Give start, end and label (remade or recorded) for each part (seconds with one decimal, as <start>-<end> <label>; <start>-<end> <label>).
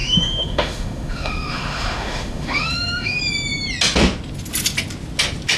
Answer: 0.0-3.2 remade; 3.2-5.6 recorded